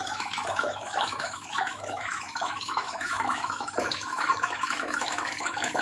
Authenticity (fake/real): fake